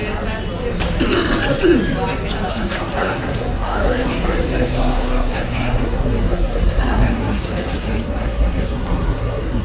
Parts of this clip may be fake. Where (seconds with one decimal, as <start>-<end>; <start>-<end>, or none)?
2.5-9.6